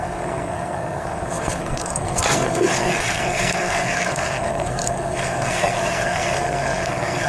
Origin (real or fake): fake